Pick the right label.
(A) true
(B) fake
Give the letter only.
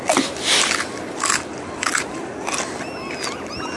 A